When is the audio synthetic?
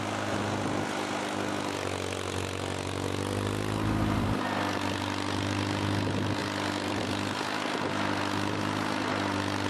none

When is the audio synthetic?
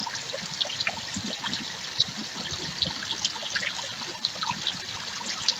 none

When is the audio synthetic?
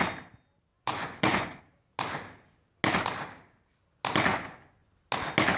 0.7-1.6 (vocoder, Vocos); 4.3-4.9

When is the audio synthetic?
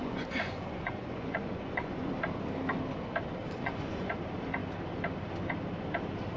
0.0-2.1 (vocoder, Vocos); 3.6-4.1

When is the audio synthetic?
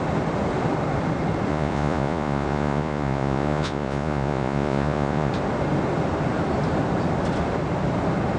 1.5-5.3 (vocoder, Vocos)